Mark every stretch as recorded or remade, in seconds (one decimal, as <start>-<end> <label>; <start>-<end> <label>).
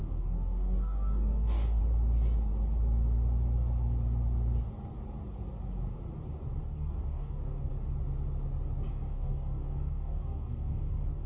0.0-1.8 remade; 1.8-6.6 recorded; 6.6-7.7 remade; 7.7-8.9 recorded; 8.9-11.3 remade